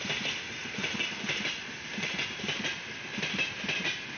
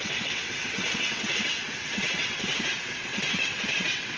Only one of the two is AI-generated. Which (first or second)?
second